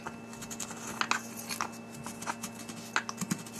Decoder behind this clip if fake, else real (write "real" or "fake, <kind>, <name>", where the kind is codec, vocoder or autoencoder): real